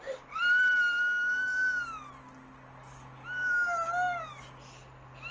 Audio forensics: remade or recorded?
recorded